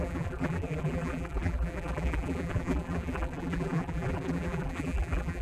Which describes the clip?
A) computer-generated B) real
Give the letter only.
A